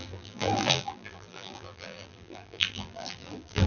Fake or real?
fake